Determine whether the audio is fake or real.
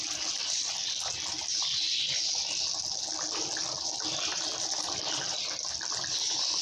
fake